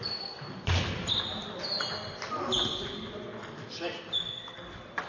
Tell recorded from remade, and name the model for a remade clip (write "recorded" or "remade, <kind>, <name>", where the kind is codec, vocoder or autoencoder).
recorded